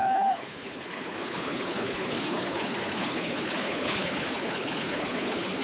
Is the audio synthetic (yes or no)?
yes